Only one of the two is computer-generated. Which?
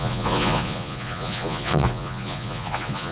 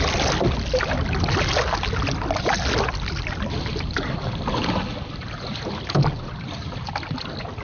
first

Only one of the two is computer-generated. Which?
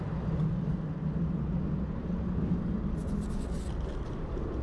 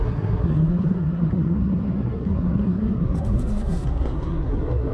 second